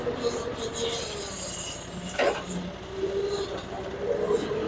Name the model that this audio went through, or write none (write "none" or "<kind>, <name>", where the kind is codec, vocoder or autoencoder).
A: none